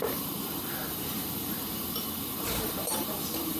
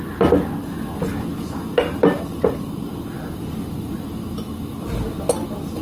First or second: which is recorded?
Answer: second